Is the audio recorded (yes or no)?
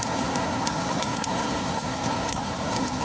no